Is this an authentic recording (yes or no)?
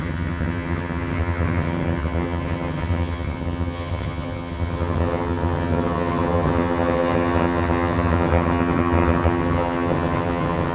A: no